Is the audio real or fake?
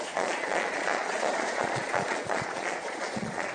fake